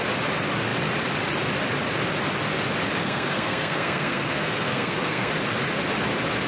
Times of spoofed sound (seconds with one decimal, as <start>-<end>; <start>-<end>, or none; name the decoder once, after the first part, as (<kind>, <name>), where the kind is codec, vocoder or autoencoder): 3.0-5.3 (codec, SNAC)

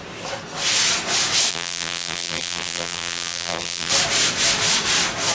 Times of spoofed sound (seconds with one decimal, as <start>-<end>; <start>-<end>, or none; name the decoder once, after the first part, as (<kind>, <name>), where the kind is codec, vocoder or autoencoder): 1.5-3.9 (vocoder, BigVGAN v2)

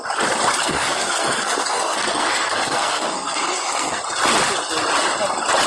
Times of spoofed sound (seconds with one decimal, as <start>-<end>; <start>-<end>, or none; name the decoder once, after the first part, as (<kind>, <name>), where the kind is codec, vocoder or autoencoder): 0.6-4.0 (codec, SNAC)

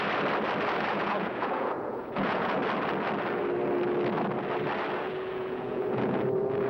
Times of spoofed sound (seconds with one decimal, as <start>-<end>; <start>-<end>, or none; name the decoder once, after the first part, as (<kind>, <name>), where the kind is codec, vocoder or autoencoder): 0.9-2.6 (vocoder, Vocos); 5.0-6.7

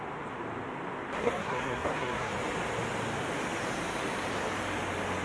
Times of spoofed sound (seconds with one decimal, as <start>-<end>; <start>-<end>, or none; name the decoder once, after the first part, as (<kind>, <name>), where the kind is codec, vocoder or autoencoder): 1.2-2.3 (codec, SNAC)